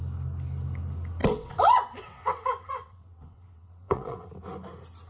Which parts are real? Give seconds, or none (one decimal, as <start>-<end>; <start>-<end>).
0.0-1.2; 4.3-5.1